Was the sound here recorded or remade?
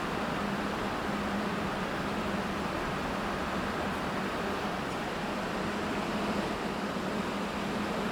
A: remade